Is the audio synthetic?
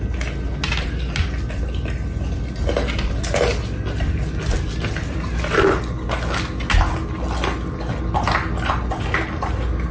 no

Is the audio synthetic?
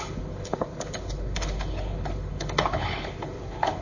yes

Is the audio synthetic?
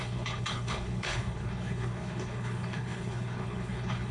yes